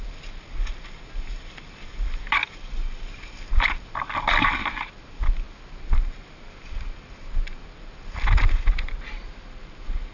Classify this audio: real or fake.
real